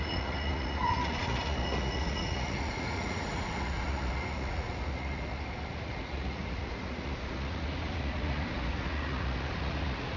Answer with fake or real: fake